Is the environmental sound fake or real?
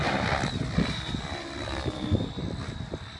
real